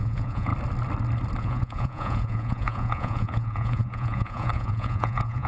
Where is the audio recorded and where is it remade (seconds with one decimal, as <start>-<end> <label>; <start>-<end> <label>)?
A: 0.0-0.5 remade; 0.5-1.4 recorded; 1.4-5.5 remade